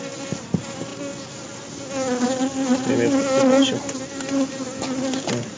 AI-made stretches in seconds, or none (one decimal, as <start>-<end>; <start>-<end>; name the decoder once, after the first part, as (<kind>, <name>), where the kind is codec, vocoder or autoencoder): none